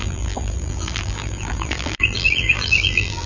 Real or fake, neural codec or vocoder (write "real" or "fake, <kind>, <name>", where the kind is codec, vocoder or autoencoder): fake, vocoder, BigVGAN v2